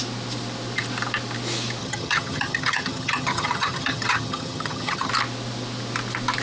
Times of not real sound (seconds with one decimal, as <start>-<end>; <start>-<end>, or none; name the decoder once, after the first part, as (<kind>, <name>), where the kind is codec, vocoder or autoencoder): 1.8-5.1 (vocoder, HiFi-GAN)